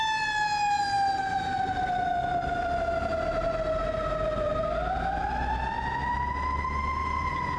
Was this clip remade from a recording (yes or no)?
no